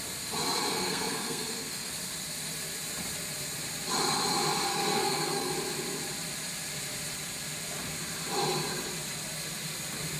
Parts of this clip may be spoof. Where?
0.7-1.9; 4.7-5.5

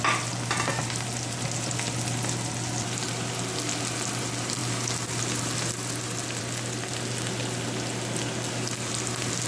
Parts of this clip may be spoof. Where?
none

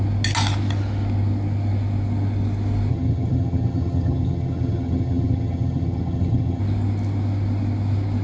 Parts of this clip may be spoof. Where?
2.9-6.6

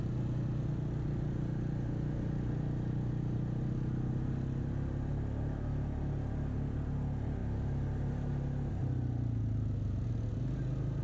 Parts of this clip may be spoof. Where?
none

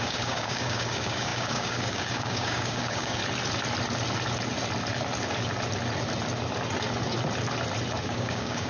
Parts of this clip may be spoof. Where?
0.0-3.2; 8.0-8.7

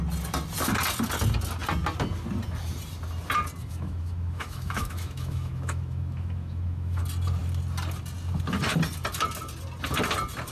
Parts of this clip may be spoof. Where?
3.6-7.0

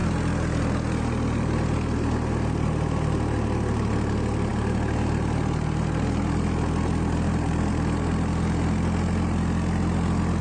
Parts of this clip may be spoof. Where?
none

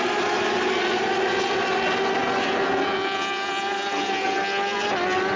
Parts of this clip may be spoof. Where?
none